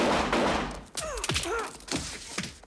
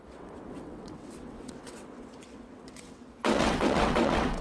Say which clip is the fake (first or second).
second